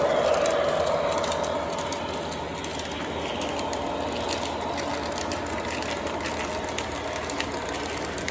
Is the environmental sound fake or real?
real